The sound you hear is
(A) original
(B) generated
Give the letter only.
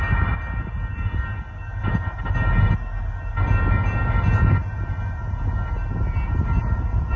A